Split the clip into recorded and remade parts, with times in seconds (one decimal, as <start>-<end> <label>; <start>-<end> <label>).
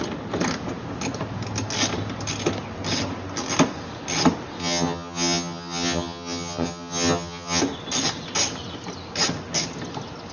0.0-4.6 recorded; 4.6-7.6 remade; 7.6-10.3 recorded